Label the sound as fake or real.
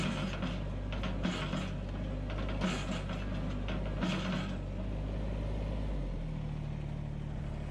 real